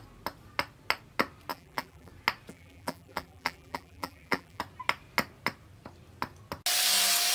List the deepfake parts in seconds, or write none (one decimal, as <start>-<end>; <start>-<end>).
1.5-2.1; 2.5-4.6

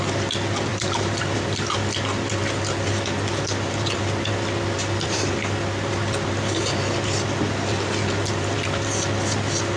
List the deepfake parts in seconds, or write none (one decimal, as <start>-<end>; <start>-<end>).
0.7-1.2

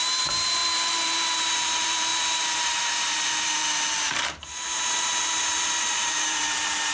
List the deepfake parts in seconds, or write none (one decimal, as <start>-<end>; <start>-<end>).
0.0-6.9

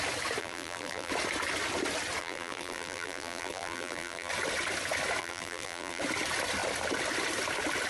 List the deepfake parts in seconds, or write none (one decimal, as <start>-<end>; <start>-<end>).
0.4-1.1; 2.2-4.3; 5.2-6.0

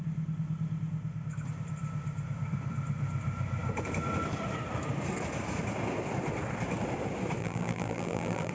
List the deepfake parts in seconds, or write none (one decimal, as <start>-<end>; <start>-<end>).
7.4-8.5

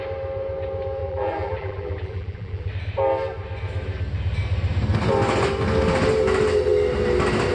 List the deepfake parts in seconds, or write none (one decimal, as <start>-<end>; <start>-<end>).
1.0-2.7

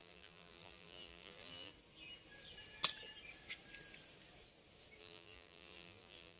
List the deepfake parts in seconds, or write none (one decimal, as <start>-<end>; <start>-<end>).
0.0-1.7; 5.0-6.4